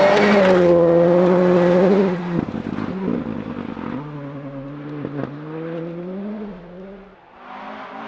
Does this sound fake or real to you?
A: real